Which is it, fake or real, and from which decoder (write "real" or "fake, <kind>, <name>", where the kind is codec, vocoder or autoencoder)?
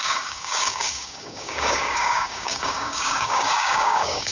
fake, codec, DAC